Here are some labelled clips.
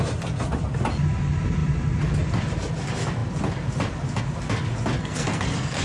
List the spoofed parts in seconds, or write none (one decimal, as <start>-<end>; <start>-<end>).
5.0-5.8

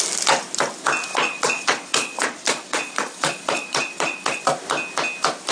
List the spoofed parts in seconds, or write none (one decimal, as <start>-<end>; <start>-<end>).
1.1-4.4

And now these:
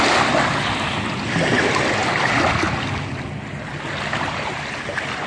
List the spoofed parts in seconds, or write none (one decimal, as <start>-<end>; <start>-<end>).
none